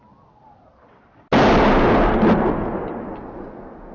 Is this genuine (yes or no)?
yes